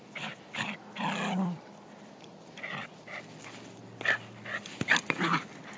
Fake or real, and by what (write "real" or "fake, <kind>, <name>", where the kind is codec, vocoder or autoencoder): real